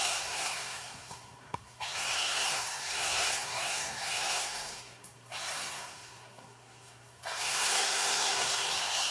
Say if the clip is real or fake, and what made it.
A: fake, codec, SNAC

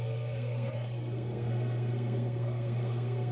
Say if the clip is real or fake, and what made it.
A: fake, codec, SNAC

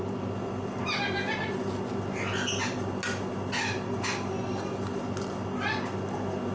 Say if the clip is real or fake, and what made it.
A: real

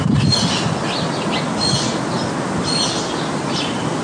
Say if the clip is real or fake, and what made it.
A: real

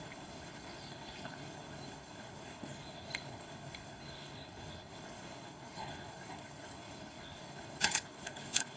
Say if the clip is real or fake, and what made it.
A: fake, codec, HILCodec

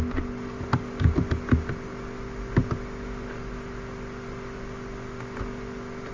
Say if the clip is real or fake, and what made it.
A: real